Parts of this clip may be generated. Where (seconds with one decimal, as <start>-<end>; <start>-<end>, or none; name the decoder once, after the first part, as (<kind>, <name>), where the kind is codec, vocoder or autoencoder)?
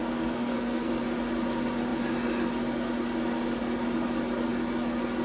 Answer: 0.0-0.9 (codec, SNAC)